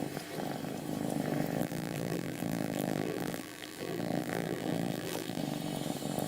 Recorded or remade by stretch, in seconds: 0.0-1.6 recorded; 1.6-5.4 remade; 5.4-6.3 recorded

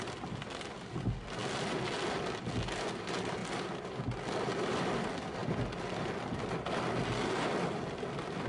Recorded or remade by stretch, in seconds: 0.0-8.5 recorded